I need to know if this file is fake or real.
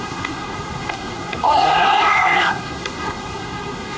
fake